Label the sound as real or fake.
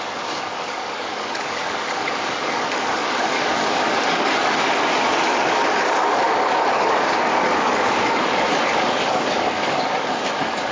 fake